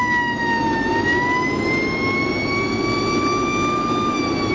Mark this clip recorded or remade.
recorded